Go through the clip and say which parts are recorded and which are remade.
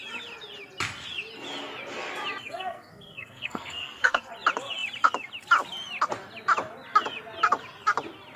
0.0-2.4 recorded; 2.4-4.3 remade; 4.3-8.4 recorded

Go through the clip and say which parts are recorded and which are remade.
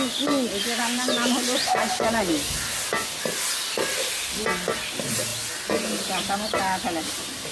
0.0-7.5 recorded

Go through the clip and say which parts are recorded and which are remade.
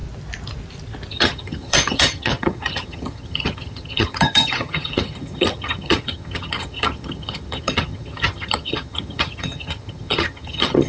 0.0-1.1 recorded; 1.1-10.9 remade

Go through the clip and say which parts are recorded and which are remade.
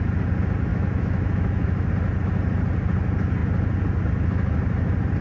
0.0-0.7 recorded; 0.7-1.9 remade; 1.9-5.2 recorded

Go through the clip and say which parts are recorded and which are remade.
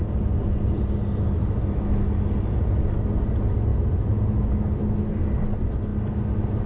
0.0-3.7 recorded; 3.7-4.5 remade; 4.5-6.7 recorded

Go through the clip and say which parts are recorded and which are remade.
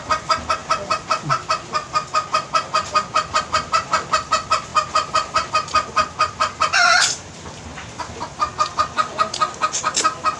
0.0-4.7 recorded; 4.7-5.5 remade; 5.5-10.4 recorded